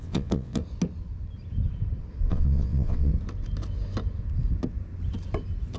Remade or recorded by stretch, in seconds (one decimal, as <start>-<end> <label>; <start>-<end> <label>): 0.0-0.6 remade; 0.6-2.3 recorded; 2.3-3.1 remade; 3.1-5.8 recorded